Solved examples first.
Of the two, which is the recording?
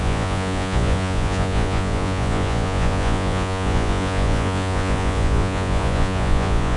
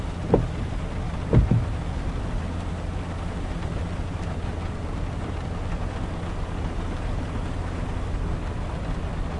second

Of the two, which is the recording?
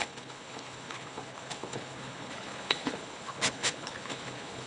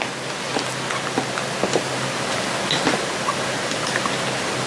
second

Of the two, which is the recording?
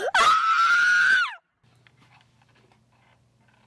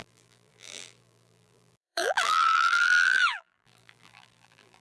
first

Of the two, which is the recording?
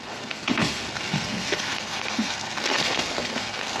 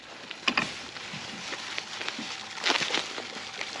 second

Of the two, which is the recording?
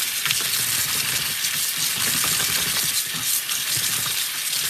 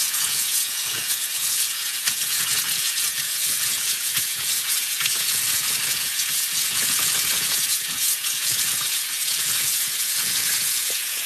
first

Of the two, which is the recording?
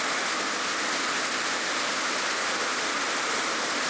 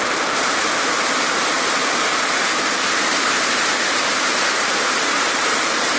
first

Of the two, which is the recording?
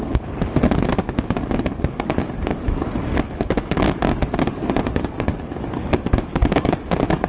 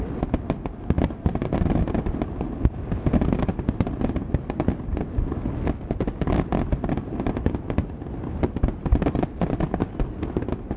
second